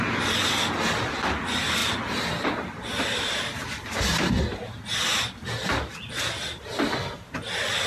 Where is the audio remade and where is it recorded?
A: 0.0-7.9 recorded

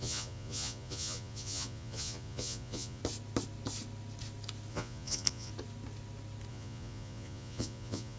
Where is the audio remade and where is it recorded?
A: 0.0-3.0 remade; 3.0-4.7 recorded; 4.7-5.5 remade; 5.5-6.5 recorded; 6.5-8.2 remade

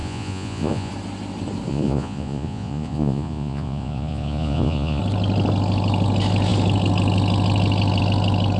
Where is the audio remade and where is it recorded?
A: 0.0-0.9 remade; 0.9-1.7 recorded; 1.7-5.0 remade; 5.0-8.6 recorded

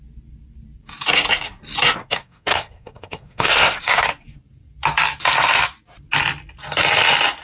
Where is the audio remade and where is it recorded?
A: 0.0-2.2 recorded; 2.2-3.8 remade; 3.8-7.4 recorded

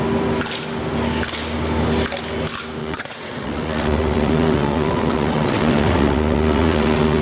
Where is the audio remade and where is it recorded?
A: 0.0-2.8 recorded; 2.8-7.2 remade

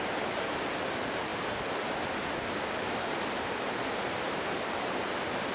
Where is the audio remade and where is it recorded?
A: 0.0-5.5 recorded